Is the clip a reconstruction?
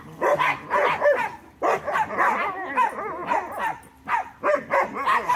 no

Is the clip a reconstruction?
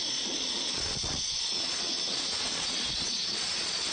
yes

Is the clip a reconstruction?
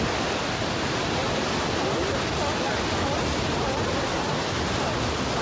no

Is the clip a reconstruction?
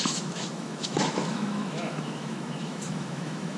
yes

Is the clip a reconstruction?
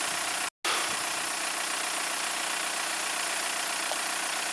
no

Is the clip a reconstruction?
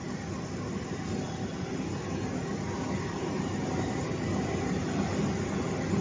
no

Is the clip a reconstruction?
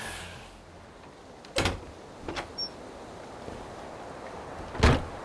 no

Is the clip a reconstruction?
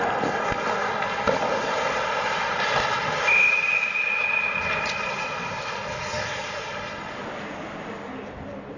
no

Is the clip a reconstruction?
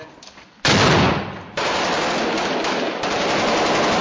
no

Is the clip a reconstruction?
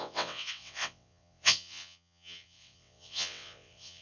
yes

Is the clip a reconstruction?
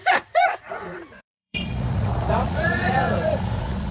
yes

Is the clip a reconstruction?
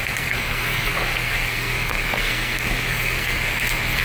yes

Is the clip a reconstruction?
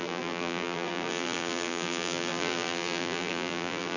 yes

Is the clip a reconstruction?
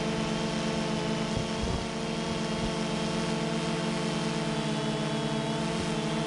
no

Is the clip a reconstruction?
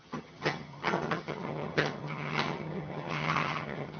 yes